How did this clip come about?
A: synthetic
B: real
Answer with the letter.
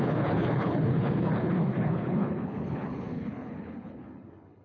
A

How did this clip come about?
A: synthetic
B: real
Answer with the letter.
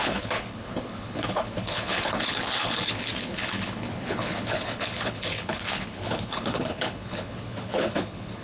A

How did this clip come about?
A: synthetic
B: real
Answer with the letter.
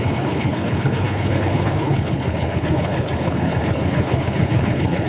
A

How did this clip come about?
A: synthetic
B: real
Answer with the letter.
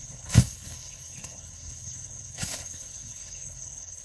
A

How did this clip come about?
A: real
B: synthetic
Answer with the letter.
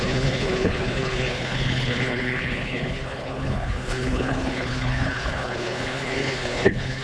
B